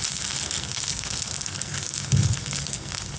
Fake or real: fake